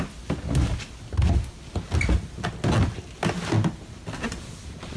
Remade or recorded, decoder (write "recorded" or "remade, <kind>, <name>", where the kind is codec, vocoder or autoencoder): recorded